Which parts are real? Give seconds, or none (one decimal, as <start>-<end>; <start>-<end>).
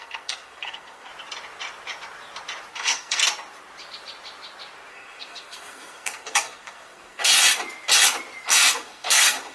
1.1-2.7; 3.2-4.9; 7.3-8.5